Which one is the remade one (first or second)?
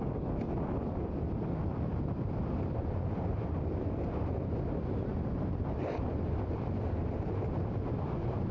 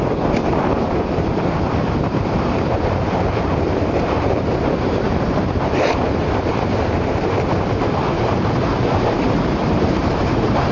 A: second